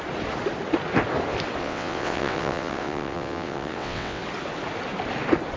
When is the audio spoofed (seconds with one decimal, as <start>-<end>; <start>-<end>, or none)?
1.6-4.2